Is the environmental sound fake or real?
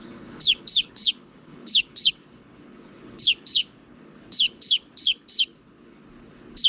fake